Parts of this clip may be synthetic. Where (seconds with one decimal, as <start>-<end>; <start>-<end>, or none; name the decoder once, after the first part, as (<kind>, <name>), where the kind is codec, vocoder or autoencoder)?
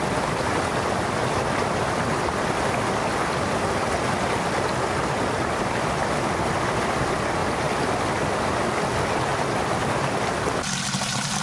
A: 7.4-8.4 (vocoder, BigVGAN v2); 9.3-10.7